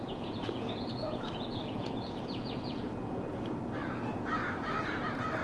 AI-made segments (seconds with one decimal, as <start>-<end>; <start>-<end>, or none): 0.0-3.2